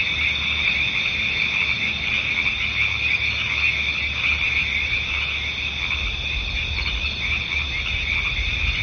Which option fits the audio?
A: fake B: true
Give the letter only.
B